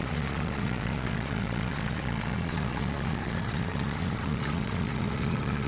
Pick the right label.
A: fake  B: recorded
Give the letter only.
A